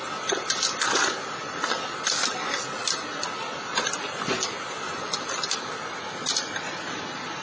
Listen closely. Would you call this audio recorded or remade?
remade